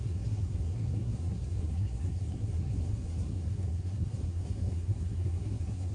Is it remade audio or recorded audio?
remade